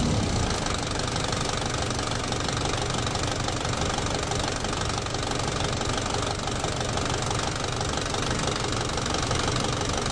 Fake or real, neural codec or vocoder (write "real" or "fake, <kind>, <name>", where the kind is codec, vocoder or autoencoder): real